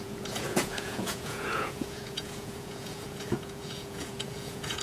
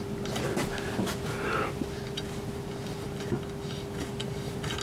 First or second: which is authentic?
second